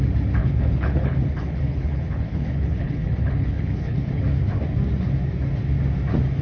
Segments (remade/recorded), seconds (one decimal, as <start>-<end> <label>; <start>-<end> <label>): 0.0-0.4 recorded; 0.4-4.2 remade; 4.2-6.4 recorded